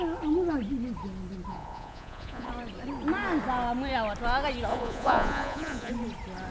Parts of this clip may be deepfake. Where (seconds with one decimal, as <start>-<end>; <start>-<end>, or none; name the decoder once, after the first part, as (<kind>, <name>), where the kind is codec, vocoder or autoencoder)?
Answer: 1.5-2.5 (vocoder, Vocos); 4.7-5.9